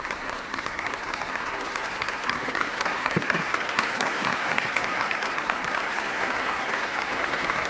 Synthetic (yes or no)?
yes